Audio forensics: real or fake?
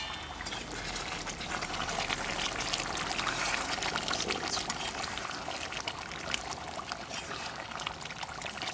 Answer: real